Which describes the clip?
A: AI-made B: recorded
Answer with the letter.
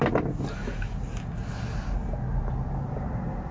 B